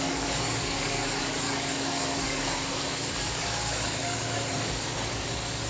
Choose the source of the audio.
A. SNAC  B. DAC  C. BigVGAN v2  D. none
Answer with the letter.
B